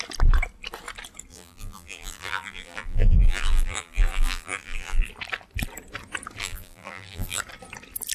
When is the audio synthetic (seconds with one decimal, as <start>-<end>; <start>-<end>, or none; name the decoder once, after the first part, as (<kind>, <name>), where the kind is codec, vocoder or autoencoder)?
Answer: 1.3-5.1 (vocoder, BigVGAN v2); 6.4-7.4